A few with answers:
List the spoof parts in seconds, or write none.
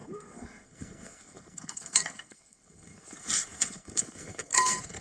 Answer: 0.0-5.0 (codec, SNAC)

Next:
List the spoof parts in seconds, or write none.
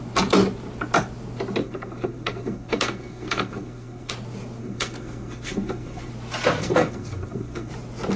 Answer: 1.6-4.1 (codec, SNAC); 4.6-6.1; 6.6-7.7